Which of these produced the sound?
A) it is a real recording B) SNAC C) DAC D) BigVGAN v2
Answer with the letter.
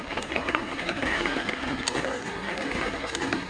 B